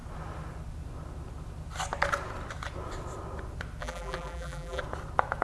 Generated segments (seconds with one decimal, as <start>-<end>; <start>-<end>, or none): 3.8-4.8

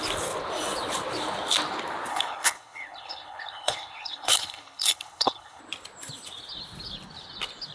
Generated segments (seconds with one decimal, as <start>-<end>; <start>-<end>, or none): 2.1-5.6

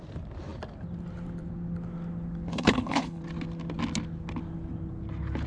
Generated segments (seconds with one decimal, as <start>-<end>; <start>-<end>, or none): 2.5-3.2

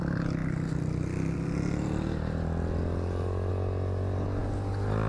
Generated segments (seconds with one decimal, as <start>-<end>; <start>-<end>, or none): none

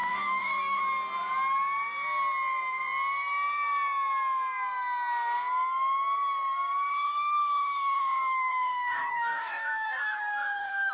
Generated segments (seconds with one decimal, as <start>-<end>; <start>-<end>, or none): 0.0-0.8; 6.9-10.9

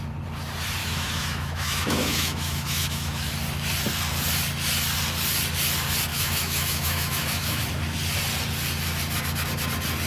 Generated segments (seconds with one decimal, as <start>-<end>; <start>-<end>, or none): 0.8-3.3; 6.1-7.6

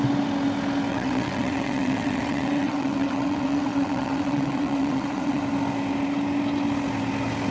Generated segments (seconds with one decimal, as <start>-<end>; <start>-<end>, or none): 0.9-5.4

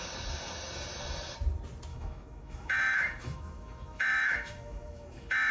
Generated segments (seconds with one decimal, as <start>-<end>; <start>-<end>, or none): 1.9-5.5